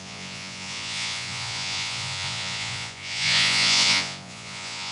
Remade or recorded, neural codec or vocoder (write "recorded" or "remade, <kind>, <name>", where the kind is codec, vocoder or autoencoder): remade, vocoder, Vocos